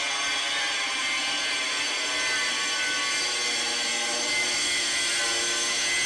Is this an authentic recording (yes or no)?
yes